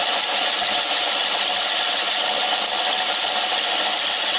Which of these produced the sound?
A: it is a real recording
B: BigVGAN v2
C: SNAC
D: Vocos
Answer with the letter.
A